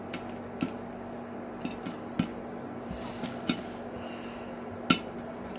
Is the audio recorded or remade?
recorded